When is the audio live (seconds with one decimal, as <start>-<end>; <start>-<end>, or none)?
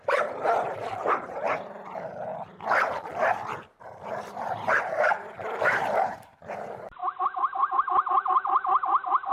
2.3-3.8; 7.0-7.7